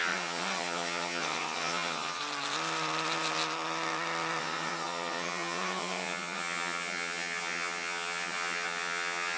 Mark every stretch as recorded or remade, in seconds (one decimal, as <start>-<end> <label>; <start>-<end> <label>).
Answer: 0.0-2.2 remade; 2.2-4.4 recorded; 4.4-9.4 remade